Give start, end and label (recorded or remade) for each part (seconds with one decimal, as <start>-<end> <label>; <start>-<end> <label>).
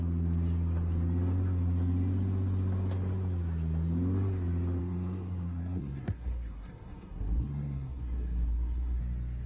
0.0-4.8 recorded; 4.8-9.0 remade; 9.0-9.5 recorded